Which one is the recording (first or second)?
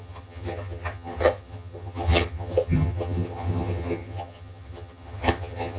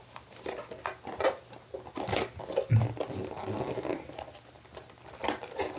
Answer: second